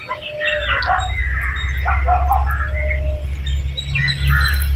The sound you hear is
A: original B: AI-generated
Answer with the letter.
A